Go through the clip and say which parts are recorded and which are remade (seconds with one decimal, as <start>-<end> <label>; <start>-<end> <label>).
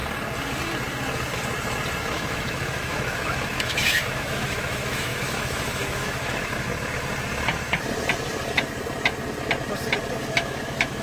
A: 0.0-2.0 recorded; 2.0-6.7 remade; 6.7-10.2 recorded; 10.2-11.0 remade